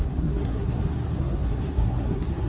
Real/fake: fake